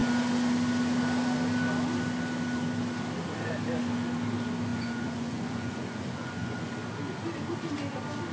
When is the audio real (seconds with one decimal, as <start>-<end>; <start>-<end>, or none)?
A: 0.0-4.7; 6.7-8.3